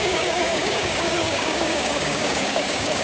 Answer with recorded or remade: remade